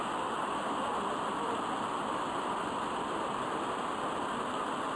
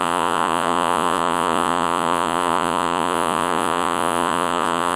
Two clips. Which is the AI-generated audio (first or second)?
second